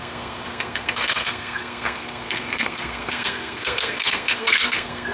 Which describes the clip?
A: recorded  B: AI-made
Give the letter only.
B